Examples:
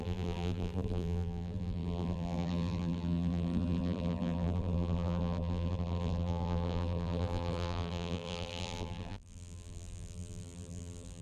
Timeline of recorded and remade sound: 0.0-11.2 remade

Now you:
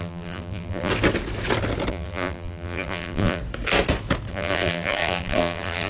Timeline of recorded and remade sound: 0.0-0.9 remade; 0.9-1.9 recorded; 1.9-3.4 remade; 3.4-4.3 recorded; 4.3-5.9 remade

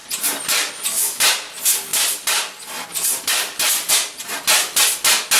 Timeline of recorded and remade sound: 0.0-0.7 remade; 0.7-1.9 recorded; 1.9-3.9 remade; 3.9-5.4 recorded

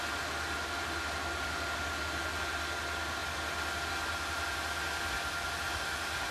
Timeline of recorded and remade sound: 0.0-6.3 recorded

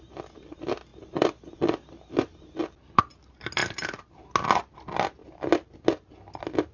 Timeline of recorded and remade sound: 0.0-0.9 recorded; 0.9-3.0 remade; 3.0-3.6 recorded; 3.6-4.2 remade; 4.2-6.7 recorded